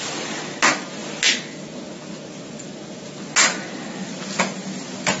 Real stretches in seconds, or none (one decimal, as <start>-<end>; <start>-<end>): 0.0-5.2